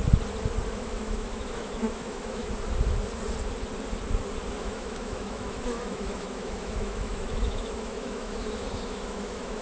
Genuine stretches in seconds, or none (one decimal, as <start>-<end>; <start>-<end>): 0.0-0.7; 2.4-4.6